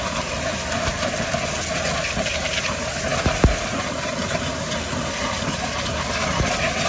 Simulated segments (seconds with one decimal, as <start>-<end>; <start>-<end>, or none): none